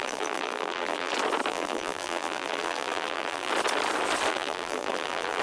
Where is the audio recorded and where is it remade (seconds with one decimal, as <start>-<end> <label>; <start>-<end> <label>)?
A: 0.0-1.1 remade; 1.1-1.5 recorded; 1.5-3.5 remade; 3.5-4.3 recorded; 4.3-5.4 remade